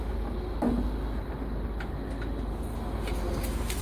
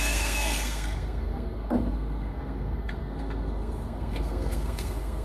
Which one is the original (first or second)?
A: first